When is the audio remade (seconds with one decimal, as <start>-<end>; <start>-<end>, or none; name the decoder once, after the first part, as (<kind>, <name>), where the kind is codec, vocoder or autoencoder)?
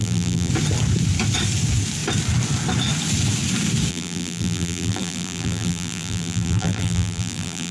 0.0-0.5 (vocoder, BigVGAN v2); 3.9-7.7